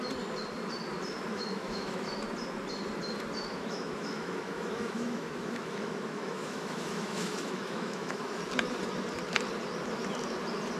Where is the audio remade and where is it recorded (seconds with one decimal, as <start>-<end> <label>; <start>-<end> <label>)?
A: 0.0-1.3 recorded; 1.3-2.1 remade; 2.1-3.5 recorded; 3.5-8.4 remade; 8.4-10.8 recorded